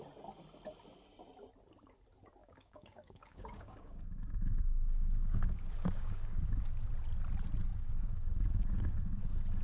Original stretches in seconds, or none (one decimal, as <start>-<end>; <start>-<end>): 0.0-2.4; 6.9-7.7; 9.2-9.6